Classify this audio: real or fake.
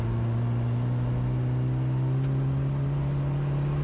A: real